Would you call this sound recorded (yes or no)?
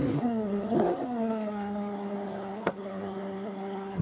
no